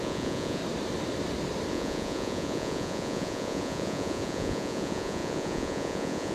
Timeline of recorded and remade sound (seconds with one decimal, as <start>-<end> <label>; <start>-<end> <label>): 0.0-0.6 remade; 0.6-1.7 recorded; 1.7-6.3 remade